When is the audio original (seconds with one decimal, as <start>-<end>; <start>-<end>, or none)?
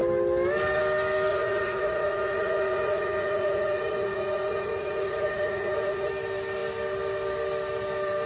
0.0-1.3; 6.1-8.3